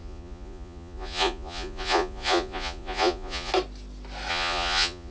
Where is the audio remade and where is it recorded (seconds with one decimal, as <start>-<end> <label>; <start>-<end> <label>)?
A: 0.0-3.5 remade; 3.5-4.3 recorded; 4.3-5.1 remade